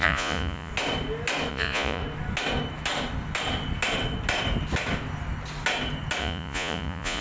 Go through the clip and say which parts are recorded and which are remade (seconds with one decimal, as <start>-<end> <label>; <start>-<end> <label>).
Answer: 0.0-0.7 remade; 0.7-1.5 recorded; 1.5-2.0 remade; 2.0-6.2 recorded; 6.2-7.2 remade